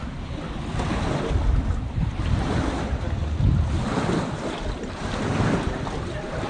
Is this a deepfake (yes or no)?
no